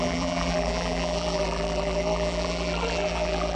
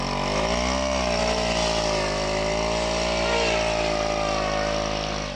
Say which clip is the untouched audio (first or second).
second